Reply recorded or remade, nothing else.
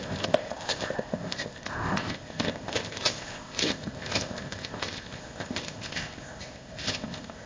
remade